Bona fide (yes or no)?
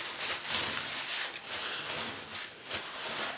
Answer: yes